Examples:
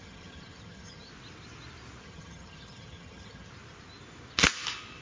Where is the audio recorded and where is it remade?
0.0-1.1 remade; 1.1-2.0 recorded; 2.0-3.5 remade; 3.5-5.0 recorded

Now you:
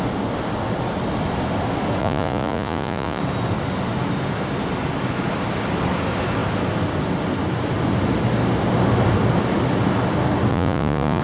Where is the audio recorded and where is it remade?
0.0-2.0 recorded; 2.0-3.2 remade; 3.2-10.5 recorded; 10.5-11.2 remade

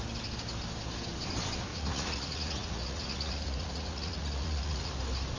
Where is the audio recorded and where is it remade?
0.0-1.7 recorded; 1.7-4.9 remade; 4.9-5.4 recorded

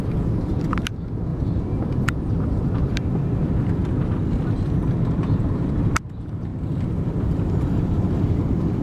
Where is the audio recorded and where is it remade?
0.0-1.3 remade; 1.3-1.8 recorded; 1.8-3.8 remade; 3.8-4.8 recorded; 4.8-6.5 remade; 6.5-7.3 recorded; 7.3-8.8 remade

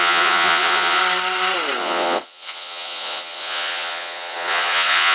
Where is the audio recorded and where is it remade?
0.0-1.0 remade; 1.0-1.8 recorded; 1.8-5.1 remade

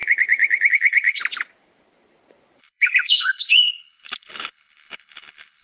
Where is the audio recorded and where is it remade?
0.0-0.7 recorded; 0.7-1.2 remade; 1.2-2.6 recorded; 2.6-5.6 remade

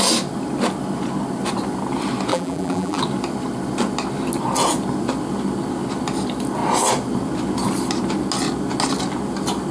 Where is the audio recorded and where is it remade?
0.0-2.3 recorded; 2.3-3.0 remade; 3.0-9.7 recorded